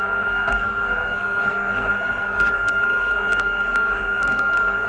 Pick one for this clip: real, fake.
fake